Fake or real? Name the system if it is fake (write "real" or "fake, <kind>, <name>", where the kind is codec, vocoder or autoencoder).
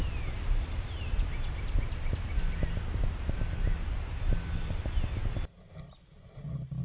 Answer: real